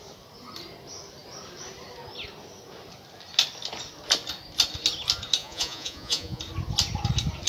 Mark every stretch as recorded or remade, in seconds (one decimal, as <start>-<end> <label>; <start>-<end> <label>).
0.0-5.4 recorded; 5.4-6.4 remade; 6.4-7.5 recorded

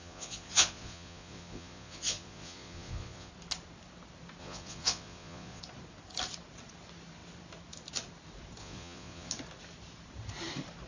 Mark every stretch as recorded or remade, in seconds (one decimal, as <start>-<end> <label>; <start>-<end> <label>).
0.0-3.3 remade; 3.3-4.4 recorded; 4.4-5.6 remade; 5.6-8.6 recorded; 8.6-9.3 remade; 9.3-10.9 recorded

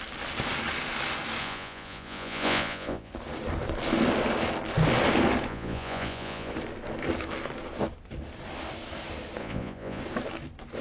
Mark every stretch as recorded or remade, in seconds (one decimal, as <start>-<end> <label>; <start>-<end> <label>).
0.0-1.4 recorded; 1.4-3.1 remade; 3.1-5.5 recorded; 5.5-6.5 remade; 6.5-9.4 recorded; 9.4-10.0 remade; 10.0-10.8 recorded

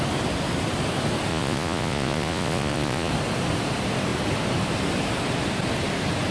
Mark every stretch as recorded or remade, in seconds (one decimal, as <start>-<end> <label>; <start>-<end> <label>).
0.0-1.3 recorded; 1.3-3.1 remade; 3.1-6.3 recorded